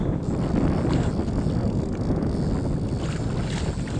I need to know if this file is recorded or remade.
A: recorded